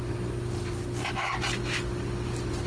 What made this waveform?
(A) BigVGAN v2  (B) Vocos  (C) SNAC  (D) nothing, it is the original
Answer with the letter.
D